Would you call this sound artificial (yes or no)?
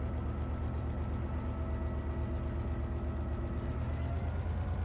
no